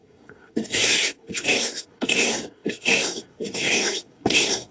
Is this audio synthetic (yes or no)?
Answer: yes